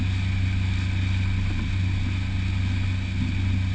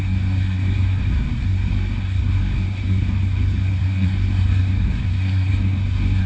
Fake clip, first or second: second